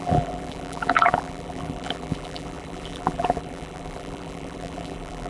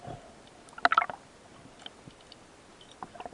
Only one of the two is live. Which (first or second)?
second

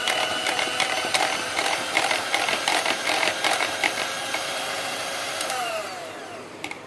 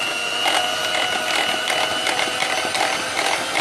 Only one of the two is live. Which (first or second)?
second